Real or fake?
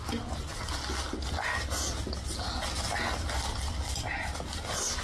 real